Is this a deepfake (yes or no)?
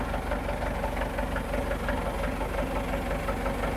no